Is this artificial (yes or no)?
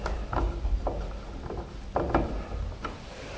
no